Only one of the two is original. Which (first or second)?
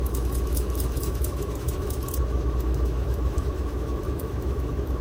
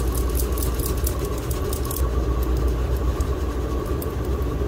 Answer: second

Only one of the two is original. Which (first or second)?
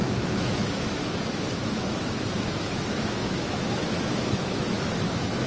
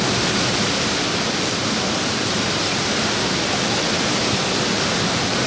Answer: second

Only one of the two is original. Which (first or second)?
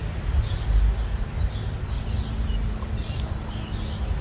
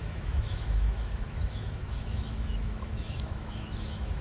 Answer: first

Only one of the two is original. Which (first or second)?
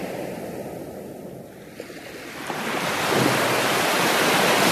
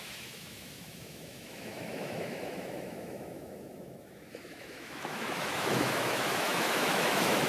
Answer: first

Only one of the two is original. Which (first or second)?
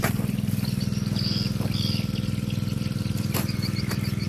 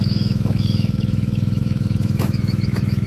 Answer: first